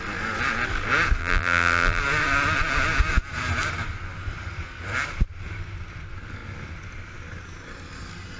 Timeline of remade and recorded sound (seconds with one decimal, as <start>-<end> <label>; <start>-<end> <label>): 0.0-1.2 recorded; 1.2-2.0 remade; 2.0-8.4 recorded